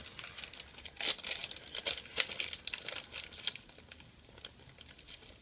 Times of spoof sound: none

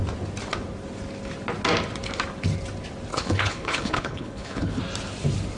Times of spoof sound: 3.1-4.8 (codec, HILCodec)

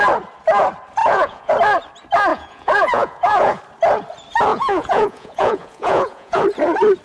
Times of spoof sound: 1.0-1.5 (vocoder, Vocos); 2.3-3.6; 4.5-6.4

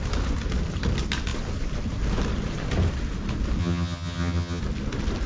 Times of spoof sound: 3.6-4.6 (vocoder, HiFi-GAN)